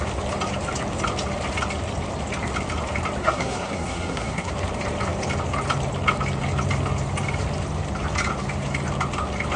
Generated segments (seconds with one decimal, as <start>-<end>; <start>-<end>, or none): 3.2-4.5